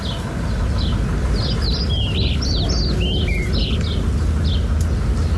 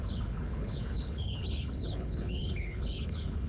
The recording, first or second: first